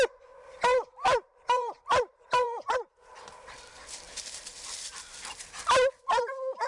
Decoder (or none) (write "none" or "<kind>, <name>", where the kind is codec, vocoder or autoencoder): vocoder, BigVGAN v2